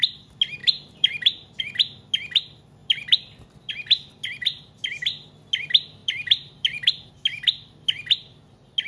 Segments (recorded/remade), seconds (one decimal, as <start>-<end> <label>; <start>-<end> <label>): 0.0-0.6 recorded; 0.6-1.6 remade; 1.6-2.8 recorded; 2.8-3.7 remade; 3.7-6.0 recorded; 6.0-7.1 remade; 7.1-8.9 recorded